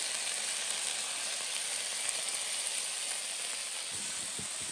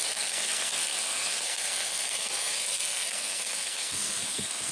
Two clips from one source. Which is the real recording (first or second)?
first